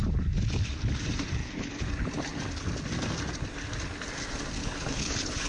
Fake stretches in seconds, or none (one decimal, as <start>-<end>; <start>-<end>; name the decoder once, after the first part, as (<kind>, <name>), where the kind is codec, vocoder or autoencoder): 1.4-1.9 (codec, HILCodec); 4.6-5.5